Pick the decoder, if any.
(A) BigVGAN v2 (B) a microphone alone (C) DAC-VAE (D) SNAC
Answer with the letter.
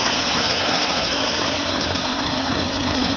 D